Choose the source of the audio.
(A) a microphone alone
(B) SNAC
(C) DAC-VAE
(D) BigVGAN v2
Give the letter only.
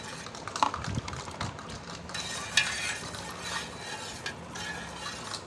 A